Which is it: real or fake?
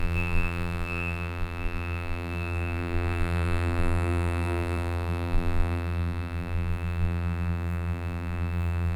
fake